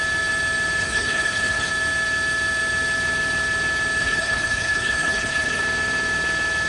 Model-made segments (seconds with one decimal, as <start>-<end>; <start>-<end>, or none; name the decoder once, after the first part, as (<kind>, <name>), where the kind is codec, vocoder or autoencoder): 0.8-1.7 (codec, HILCodec); 4.0-5.6

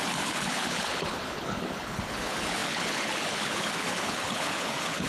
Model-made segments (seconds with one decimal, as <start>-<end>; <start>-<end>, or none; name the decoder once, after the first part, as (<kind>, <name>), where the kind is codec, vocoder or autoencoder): 0.0-5.1 (codec, HILCodec)

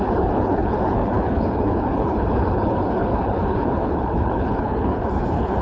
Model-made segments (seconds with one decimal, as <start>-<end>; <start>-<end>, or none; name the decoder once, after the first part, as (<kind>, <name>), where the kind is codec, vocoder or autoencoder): 0.0-5.6 (codec, HILCodec)